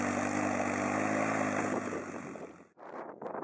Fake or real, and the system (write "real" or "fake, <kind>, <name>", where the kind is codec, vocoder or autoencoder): real